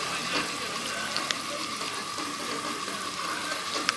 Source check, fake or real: real